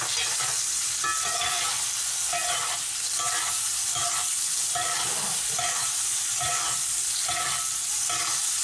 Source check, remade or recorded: recorded